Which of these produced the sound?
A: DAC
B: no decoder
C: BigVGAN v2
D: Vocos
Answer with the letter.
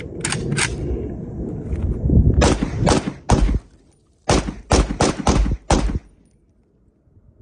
B